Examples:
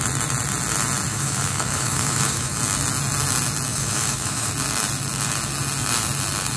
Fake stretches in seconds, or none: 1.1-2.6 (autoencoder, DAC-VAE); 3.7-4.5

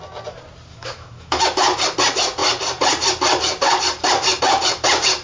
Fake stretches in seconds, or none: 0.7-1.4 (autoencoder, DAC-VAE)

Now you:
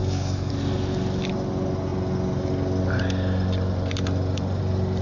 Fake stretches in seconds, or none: 0.0-0.5 (codec, SNAC)